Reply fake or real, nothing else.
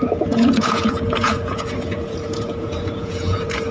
fake